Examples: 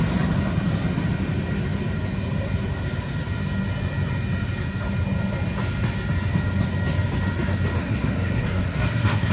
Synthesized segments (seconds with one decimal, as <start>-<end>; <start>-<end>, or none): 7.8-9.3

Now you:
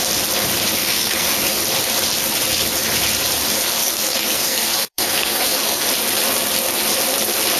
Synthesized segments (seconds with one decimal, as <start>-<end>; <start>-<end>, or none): 0.8-1.6; 3.8-5.9

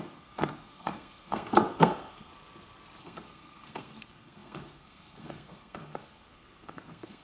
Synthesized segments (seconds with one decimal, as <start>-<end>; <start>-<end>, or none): 0.0-2.3; 3.0-7.2